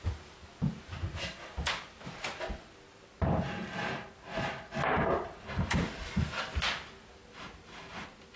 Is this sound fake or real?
real